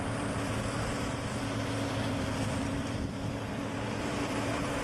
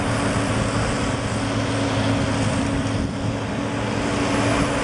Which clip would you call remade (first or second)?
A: first